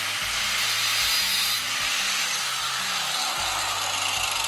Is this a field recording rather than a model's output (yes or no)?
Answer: yes